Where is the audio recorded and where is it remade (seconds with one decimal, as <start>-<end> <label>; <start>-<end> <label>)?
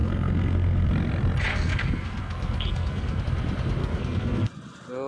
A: 0.0-0.9 remade; 0.9-1.5 recorded; 1.5-3.2 remade; 3.2-3.8 recorded; 3.8-4.5 remade; 4.5-5.1 recorded